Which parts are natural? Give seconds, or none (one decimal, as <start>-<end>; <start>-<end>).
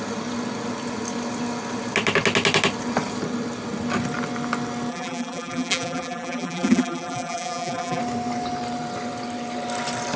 0.0-4.9; 8.0-10.2